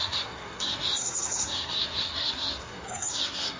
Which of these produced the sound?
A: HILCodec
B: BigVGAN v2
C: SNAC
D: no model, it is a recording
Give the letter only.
C